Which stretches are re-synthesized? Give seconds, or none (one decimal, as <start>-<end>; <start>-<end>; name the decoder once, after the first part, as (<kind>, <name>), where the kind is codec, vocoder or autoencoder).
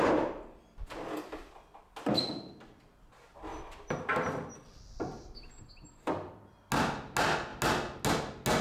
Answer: none